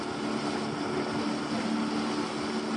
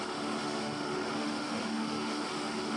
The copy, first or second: second